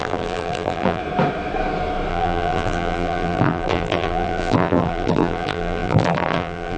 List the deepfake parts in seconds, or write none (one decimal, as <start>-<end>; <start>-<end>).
0.0-1.0; 2.1-6.8